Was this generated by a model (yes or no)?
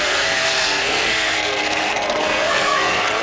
yes